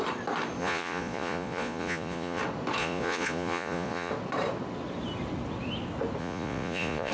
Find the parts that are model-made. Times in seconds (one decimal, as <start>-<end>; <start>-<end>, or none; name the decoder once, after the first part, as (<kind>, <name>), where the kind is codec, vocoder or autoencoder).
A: 0.6-2.4 (vocoder, Vocos); 2.8-4.1; 6.2-7.1

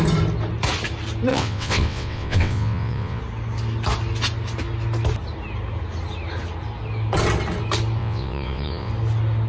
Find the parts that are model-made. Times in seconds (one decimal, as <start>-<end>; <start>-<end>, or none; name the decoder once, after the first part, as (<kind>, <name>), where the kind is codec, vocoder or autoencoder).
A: 1.3-3.2 (vocoder, WaveNeXt); 8.0-8.9